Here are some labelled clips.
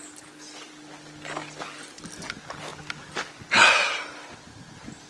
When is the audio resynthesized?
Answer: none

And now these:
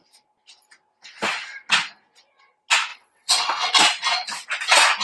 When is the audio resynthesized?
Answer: 2.9-3.7

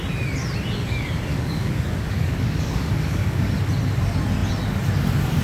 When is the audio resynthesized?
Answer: 1.3-3.5

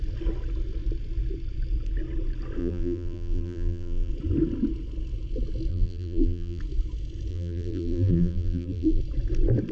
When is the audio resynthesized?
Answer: 2.6-4.1; 5.7-6.6; 7.3-9.0